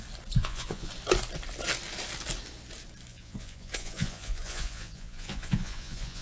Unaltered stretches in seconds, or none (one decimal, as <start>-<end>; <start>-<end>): 0.0-0.4; 0.9-3.1